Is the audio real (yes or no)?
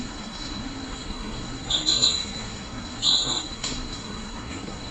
no